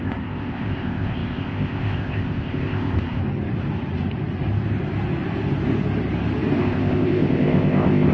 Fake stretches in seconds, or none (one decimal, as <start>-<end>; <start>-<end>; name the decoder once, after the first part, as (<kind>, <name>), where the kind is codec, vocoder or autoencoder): 0.0-3.2 (codec, ZipCodec); 6.6-8.1